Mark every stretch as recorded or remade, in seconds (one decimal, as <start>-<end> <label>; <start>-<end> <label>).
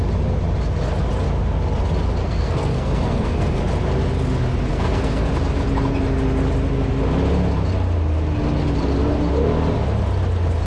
0.0-2.2 recorded; 2.2-3.6 remade; 3.6-4.7 recorded; 4.7-5.3 remade; 5.3-10.7 recorded